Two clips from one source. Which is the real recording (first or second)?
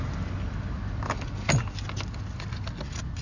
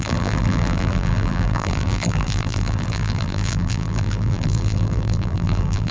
first